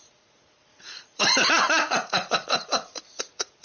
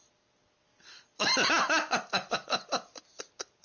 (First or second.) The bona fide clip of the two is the second